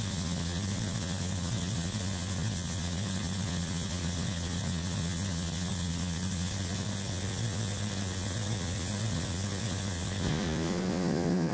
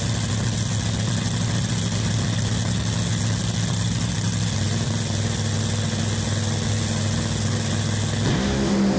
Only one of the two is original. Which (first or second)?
second